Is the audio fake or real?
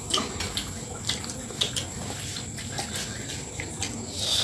real